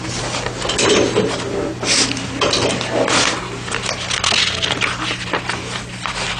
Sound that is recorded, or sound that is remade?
recorded